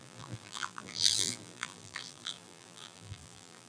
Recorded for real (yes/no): no